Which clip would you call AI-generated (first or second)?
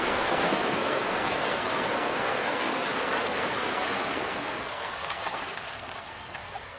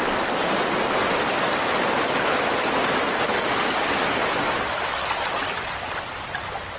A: first